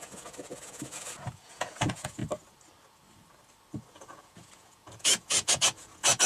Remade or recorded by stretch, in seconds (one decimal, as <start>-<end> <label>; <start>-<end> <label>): 0.0-2.2 remade; 2.2-3.9 recorded; 3.9-6.3 remade